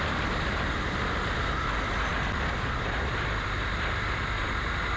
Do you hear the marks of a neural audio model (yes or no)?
no